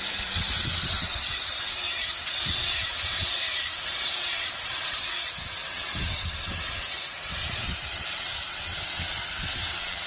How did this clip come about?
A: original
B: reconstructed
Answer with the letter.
B